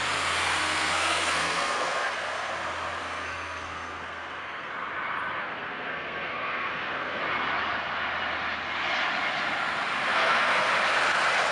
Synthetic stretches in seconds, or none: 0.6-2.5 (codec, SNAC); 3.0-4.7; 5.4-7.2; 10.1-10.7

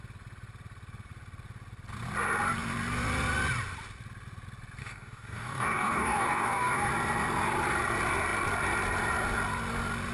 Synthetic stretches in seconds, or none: 4.8-6.9 (codec, DAC)

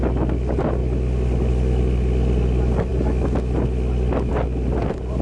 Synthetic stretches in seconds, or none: none